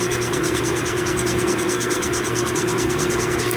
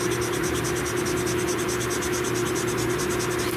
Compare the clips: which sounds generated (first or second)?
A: first